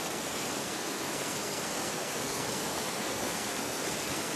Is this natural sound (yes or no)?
no